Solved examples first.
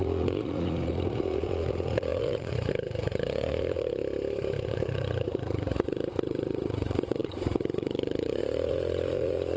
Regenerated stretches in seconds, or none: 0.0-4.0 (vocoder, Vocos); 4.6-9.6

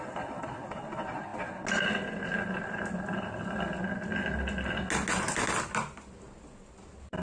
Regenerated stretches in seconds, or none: none

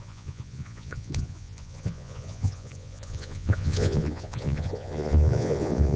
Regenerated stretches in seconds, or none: 0.0-6.0 (vocoder, Vocos)

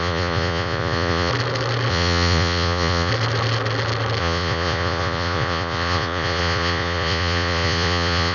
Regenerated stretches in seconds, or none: 0.0-1.3 (vocoder, Vocos); 1.9-3.1; 4.2-8.3

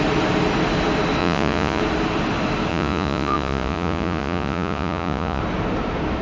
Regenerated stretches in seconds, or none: 1.2-1.8 (vocoder, Vocos); 2.7-5.4

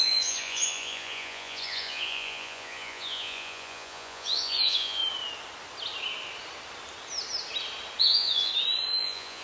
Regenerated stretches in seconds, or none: 0.0-5.0 (vocoder, Vocos); 8.0-8.5; 9.0-9.4

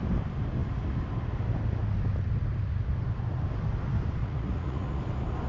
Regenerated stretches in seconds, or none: 4.2-5.0 (vocoder, Vocos)